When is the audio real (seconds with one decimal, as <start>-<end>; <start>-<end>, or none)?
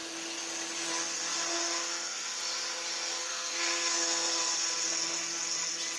0.0-3.2; 4.4-6.0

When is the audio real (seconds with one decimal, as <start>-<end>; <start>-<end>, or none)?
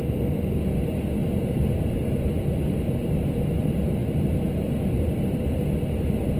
0.0-1.2; 3.3-4.0; 4.8-6.4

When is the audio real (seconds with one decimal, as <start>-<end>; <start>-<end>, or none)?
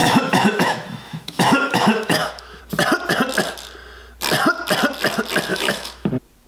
2.6-5.5; 6.1-6.5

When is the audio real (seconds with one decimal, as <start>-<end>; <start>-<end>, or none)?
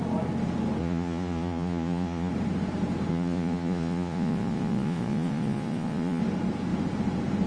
0.0-0.8; 2.3-3.1; 6.2-7.5